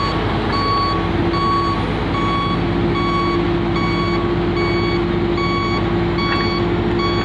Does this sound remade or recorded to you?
recorded